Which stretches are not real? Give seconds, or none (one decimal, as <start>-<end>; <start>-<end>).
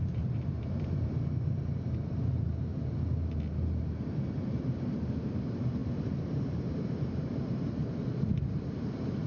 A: 0.0-2.7; 4.5-9.3